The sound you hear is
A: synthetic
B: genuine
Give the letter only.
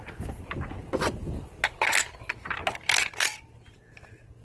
B